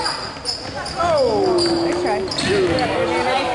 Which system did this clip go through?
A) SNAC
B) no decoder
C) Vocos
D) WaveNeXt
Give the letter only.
B